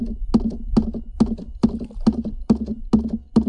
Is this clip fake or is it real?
real